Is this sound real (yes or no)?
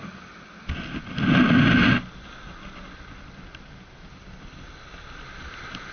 yes